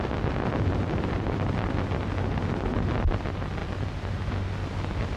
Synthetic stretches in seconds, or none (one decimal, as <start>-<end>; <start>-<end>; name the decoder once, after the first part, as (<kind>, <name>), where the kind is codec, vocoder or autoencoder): none